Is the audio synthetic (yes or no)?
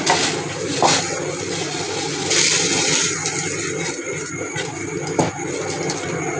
no